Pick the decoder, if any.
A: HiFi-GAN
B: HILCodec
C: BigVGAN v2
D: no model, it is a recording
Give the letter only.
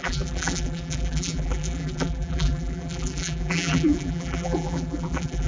C